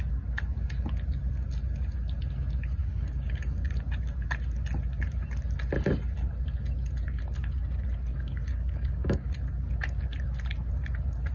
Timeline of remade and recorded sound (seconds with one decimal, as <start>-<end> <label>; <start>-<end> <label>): 0.0-2.8 recorded; 2.8-3.7 remade; 3.7-8.1 recorded; 8.1-9.3 remade; 9.3-11.3 recorded